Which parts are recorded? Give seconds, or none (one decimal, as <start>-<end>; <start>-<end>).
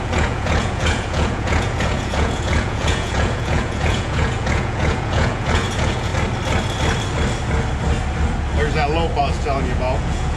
6.1-9.2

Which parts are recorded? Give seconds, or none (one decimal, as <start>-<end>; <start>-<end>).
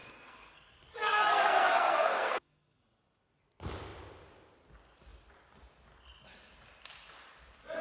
2.8-7.8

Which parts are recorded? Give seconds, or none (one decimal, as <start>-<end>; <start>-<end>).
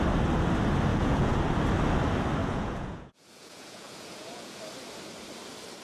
0.0-0.9; 1.4-2.4; 4.6-5.8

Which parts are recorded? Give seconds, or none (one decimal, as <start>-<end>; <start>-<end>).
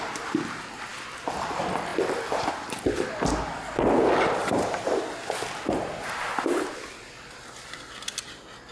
0.0-4.4; 5.0-8.7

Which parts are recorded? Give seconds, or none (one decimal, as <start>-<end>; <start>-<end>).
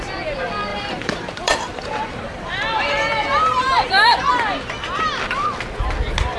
0.0-0.7; 4.2-6.4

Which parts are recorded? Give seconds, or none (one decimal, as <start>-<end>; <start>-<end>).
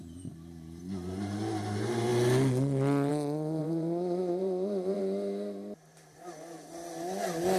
0.0-3.6; 5.0-7.6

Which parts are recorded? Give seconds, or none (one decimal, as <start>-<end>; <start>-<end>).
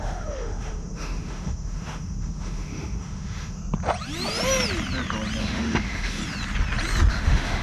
3.6-5.4; 6.2-7.1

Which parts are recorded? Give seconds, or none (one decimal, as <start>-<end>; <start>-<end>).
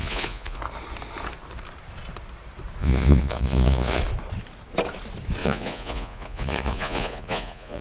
0.6-2.8; 4.0-5.4